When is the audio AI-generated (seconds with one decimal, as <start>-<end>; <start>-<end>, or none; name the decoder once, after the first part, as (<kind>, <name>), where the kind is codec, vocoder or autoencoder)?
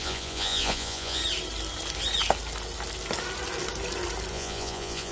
0.0-1.2 (vocoder, Vocos); 4.3-5.1